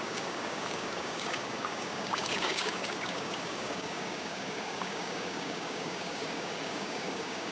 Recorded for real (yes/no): no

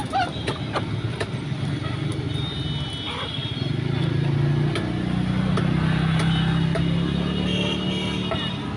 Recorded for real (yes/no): yes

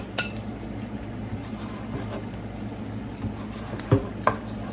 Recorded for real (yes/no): yes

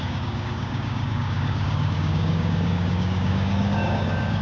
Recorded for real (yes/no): no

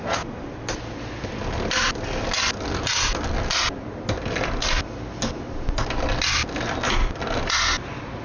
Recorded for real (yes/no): yes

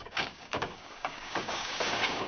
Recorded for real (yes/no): no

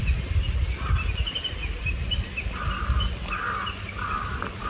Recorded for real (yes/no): yes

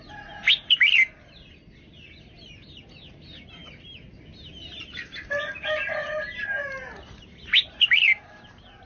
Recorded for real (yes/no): yes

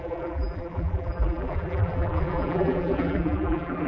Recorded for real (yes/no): no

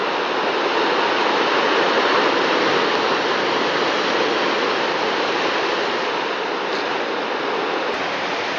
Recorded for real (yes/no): yes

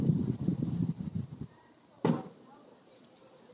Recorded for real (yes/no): no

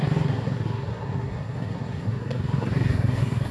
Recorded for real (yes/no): no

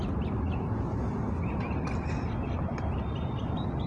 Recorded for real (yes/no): yes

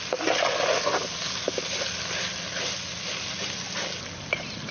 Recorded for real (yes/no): yes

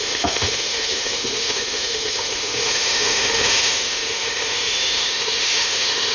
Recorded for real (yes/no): no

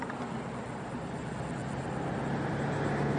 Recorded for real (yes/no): yes